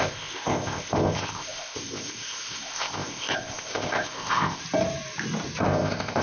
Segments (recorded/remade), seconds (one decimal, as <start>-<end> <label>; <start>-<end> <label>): 0.0-4.6 remade; 4.6-5.6 recorded; 5.6-6.2 remade

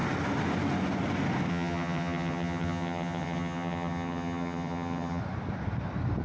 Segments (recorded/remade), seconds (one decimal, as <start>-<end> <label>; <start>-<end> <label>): 0.0-1.5 recorded; 1.5-5.2 remade; 5.2-6.2 recorded

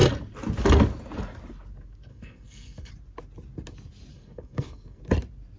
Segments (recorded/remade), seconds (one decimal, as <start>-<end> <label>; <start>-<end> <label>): 0.0-2.1 recorded; 2.1-2.9 remade; 2.9-4.1 recorded; 4.1-5.0 remade; 5.0-5.6 recorded

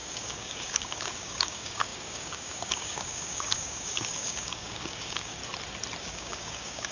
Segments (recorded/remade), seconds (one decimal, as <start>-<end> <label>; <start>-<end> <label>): 0.0-5.4 remade; 5.4-6.0 recorded; 6.0-6.9 remade

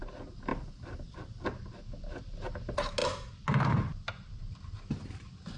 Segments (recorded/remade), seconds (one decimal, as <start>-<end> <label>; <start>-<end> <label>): 0.0-0.5 recorded; 0.5-1.8 remade; 1.8-3.0 recorded; 3.0-4.5 remade; 4.5-5.6 recorded

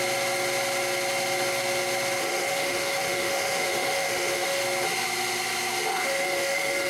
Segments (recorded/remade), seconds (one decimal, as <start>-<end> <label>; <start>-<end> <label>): 0.0-2.2 recorded; 2.2-4.6 remade; 4.6-5.9 recorded; 5.9-6.9 remade